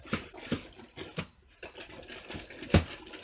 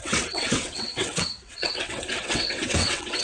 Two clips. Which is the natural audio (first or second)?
first